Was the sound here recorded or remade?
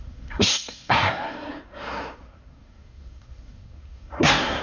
remade